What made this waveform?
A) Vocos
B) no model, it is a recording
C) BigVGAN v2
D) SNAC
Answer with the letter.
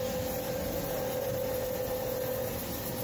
B